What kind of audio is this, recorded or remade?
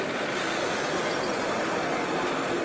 remade